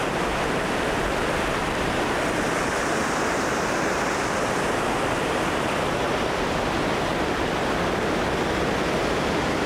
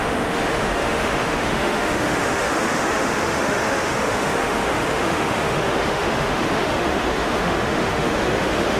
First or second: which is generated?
second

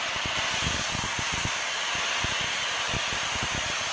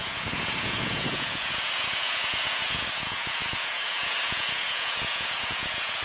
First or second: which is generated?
second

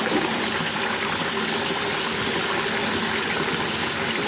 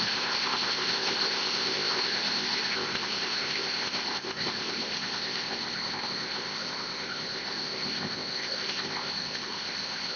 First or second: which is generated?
second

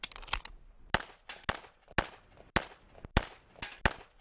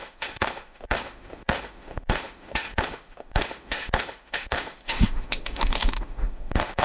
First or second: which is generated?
second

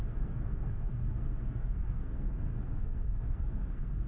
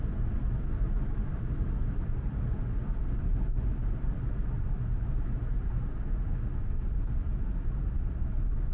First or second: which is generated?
first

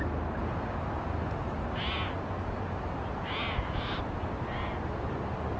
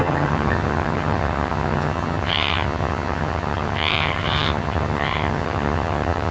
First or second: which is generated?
second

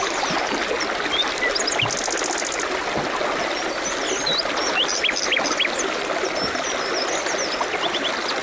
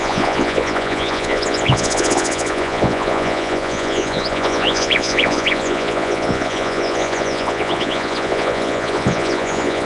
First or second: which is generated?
second